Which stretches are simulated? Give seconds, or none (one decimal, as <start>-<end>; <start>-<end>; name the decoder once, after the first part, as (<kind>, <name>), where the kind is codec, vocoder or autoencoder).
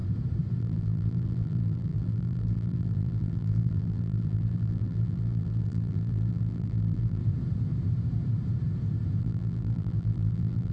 0.6-7.2 (vocoder, BigVGAN v2); 9.2-10.7